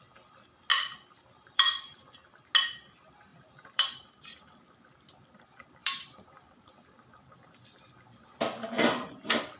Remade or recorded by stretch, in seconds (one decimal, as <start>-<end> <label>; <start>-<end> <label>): 0.0-0.7 recorded; 0.7-2.3 remade; 2.3-3.3 recorded; 3.3-4.7 remade; 4.7-5.8 recorded; 5.8-6.7 remade; 6.7-9.6 recorded

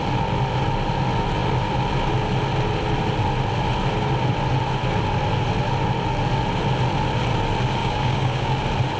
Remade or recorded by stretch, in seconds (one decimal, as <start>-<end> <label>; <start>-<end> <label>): 0.0-7.8 recorded; 7.8-8.5 remade; 8.5-9.0 recorded

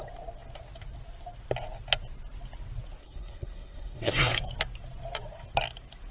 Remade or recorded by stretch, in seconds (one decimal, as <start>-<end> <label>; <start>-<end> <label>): 0.0-3.0 recorded; 3.0-4.3 remade; 4.3-6.1 recorded

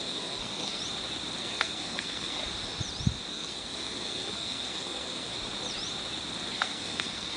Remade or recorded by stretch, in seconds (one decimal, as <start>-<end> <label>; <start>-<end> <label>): 0.0-0.8 remade; 0.8-1.4 recorded; 1.4-2.4 remade; 2.4-3.3 recorded; 3.3-5.3 remade; 5.3-6.5 recorded; 6.5-7.4 remade

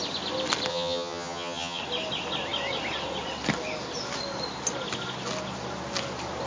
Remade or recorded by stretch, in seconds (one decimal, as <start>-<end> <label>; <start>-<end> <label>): 0.0-0.7 recorded; 0.7-1.8 remade; 1.8-6.5 recorded